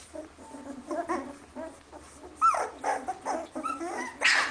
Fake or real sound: real